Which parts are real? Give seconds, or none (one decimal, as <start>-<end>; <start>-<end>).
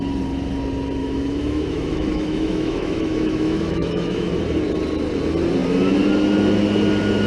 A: 0.0-1.0; 4.3-7.3